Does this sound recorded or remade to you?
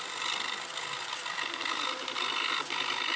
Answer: remade